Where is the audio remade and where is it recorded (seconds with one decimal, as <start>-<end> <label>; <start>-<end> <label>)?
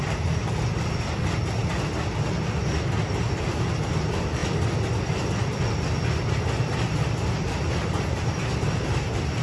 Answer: 0.0-9.4 recorded